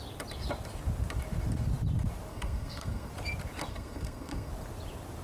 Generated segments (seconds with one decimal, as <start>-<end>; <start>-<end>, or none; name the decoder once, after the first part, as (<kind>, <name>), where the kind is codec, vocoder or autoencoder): 2.3-3.1 (codec, SNAC); 3.7-4.5

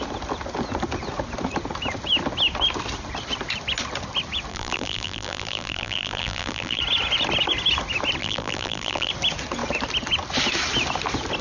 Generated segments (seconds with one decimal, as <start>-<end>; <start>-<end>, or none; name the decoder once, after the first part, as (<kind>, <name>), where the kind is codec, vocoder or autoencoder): 4.5-6.8 (vocoder, BigVGAN v2); 8.2-9.1

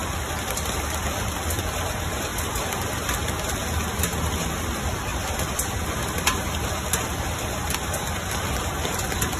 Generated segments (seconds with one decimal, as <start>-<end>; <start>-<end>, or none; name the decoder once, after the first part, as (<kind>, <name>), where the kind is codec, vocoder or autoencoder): 0.0-1.0 (vocoder, BigVGAN v2); 2.3-3.1; 5.1-6.5; 7.6-8.3

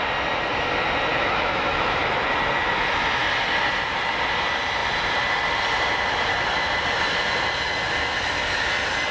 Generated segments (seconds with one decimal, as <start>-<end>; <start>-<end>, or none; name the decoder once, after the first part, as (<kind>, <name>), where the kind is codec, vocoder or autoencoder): 1.1-2.0 (autoencoder, DAC-VAE)

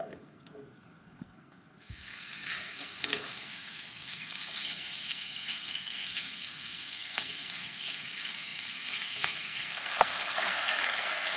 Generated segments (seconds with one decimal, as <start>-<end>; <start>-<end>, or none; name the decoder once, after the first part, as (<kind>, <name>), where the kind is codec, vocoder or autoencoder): 0.0-11.4 (codec, SNAC)